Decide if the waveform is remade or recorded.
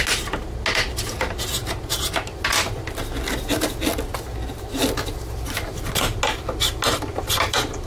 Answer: recorded